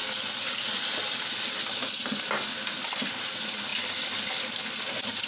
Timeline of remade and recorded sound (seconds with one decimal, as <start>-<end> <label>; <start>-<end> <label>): 0.0-3.2 remade; 3.2-3.7 recorded; 3.7-4.3 remade; 4.3-5.3 recorded